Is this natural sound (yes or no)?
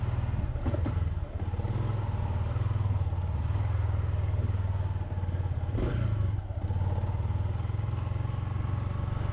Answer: yes